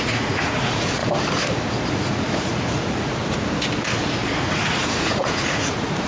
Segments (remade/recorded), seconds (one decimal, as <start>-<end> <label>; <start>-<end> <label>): 0.0-1.0 remade; 1.0-1.9 recorded; 1.9-3.2 remade; 3.2-4.3 recorded; 4.3-6.1 remade